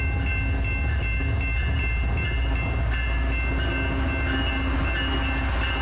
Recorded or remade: recorded